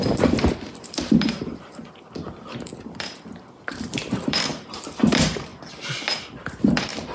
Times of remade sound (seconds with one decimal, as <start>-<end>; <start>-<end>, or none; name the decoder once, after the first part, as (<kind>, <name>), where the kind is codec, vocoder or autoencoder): 0.0-5.5 (vocoder, BigVGAN v2); 6.2-7.1